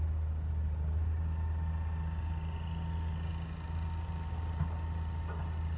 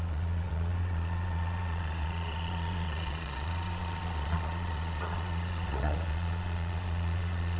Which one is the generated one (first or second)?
second